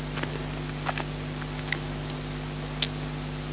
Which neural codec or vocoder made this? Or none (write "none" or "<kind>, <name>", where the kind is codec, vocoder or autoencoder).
none